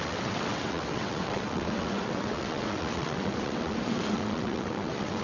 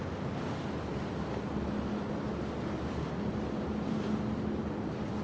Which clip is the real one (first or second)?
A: second